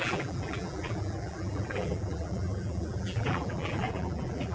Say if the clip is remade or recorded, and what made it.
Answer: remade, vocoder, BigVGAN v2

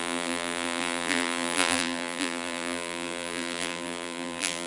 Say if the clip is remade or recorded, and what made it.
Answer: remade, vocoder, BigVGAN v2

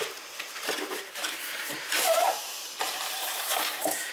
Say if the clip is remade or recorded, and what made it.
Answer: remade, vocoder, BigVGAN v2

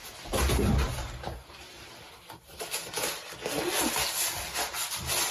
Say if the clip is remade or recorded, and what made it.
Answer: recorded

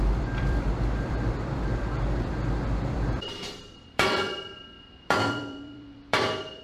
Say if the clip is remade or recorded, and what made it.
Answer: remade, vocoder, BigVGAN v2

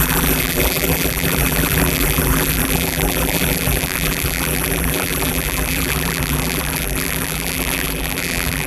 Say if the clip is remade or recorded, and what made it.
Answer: remade, vocoder, BigVGAN v2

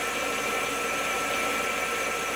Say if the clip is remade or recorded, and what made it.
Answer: recorded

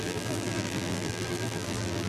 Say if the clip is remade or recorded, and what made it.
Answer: remade, vocoder, BigVGAN v2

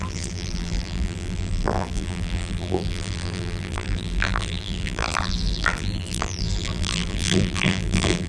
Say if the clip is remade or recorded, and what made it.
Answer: remade, vocoder, BigVGAN v2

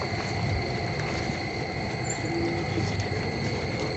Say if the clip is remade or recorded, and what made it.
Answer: recorded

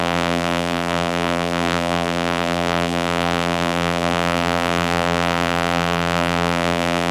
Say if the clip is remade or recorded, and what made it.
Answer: remade, vocoder, BigVGAN v2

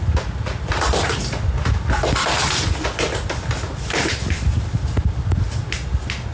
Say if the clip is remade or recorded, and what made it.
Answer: recorded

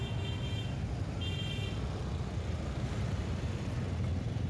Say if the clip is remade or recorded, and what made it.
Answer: recorded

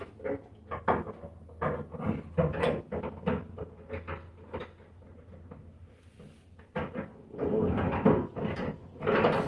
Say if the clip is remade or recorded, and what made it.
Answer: remade, vocoder, BigVGAN v2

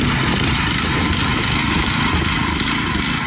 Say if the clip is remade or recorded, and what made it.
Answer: recorded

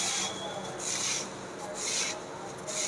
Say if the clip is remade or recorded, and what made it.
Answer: recorded